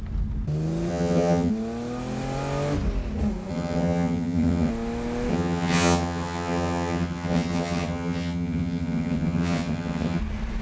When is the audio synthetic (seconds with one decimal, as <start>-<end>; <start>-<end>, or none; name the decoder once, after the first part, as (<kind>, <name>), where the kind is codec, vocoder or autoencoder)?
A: 0.9-1.5 (vocoder, HiFi-GAN); 3.5-4.7; 5.3-10.2